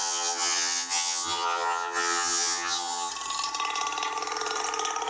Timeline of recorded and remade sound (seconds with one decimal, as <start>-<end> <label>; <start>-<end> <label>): 0.0-3.1 remade; 3.1-5.1 recorded